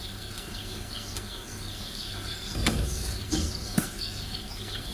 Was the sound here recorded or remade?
remade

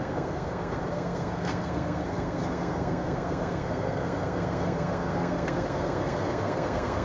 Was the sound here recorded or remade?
remade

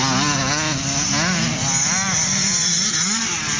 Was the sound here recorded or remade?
recorded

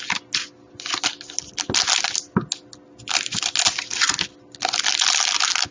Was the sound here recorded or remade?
recorded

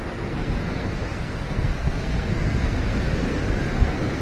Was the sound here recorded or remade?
remade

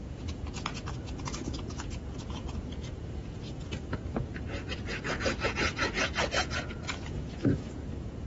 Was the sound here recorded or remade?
remade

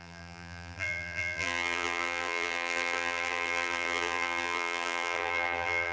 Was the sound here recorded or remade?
remade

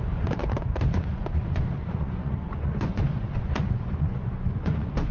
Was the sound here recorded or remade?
remade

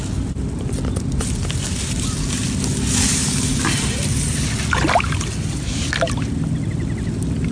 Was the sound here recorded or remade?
recorded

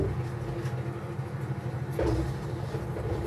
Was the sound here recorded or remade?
recorded